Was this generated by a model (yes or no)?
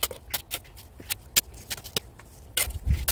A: no